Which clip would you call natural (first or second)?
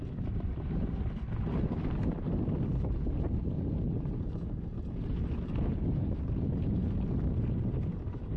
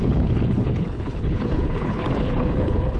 first